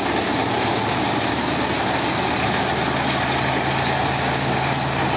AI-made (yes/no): no